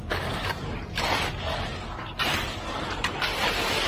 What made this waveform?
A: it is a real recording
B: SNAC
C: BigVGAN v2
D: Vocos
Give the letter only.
A